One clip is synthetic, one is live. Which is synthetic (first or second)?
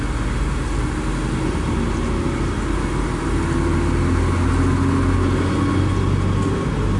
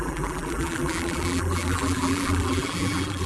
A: second